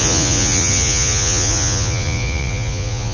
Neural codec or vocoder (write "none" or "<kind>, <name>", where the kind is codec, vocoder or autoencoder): vocoder, Vocos